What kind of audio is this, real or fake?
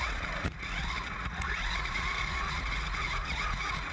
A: fake